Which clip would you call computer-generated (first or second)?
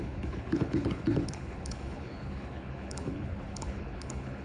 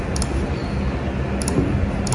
first